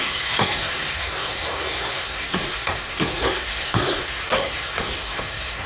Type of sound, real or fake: fake